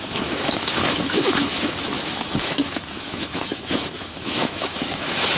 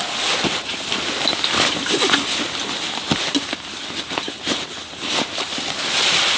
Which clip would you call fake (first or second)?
first